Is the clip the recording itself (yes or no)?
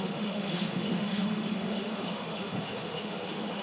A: no